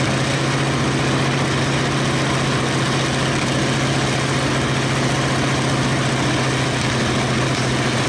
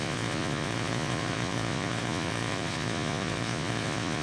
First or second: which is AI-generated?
second